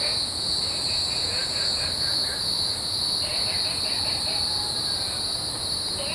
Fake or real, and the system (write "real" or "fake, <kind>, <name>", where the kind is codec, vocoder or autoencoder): real